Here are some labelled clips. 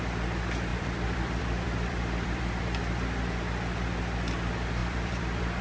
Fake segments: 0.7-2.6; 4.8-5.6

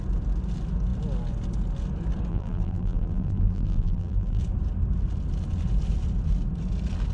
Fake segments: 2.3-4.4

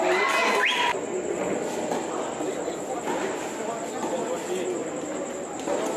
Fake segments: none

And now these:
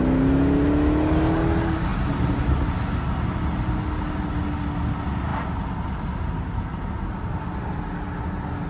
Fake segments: none

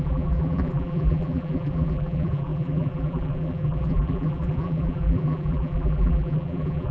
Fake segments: 0.0-6.9

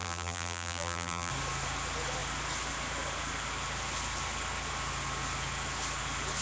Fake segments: 0.0-1.3